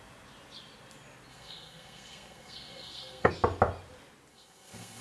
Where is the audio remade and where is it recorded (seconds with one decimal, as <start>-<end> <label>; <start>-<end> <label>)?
0.0-1.3 recorded; 1.3-3.3 remade; 3.3-4.3 recorded; 4.3-5.0 remade